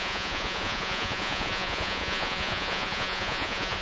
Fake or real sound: fake